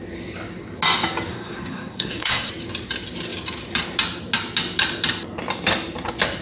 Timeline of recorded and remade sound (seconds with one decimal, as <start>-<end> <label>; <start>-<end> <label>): 0.0-1.3 recorded; 1.3-2.5 remade; 2.5-6.4 recorded